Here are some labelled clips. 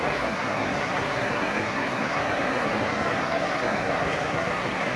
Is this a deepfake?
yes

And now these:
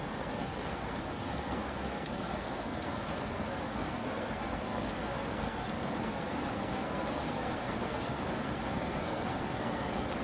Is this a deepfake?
yes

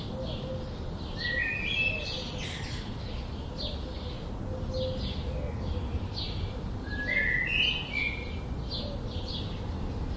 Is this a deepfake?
no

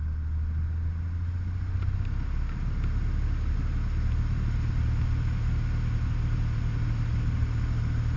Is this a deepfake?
no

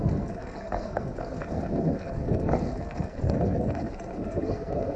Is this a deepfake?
yes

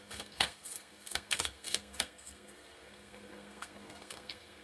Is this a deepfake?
yes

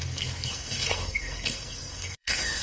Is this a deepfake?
yes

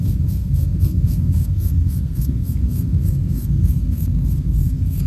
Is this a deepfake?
yes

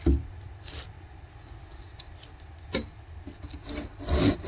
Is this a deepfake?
no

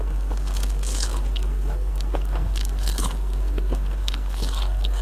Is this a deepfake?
yes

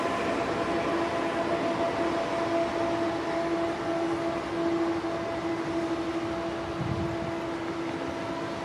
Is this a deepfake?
no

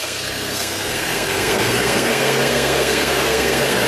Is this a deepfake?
yes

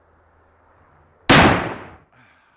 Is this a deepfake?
no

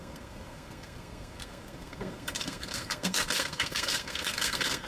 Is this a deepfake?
yes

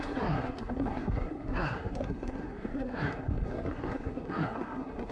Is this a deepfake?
yes